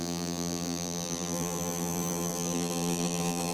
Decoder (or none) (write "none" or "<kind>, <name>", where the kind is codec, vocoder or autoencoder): vocoder, BigVGAN v2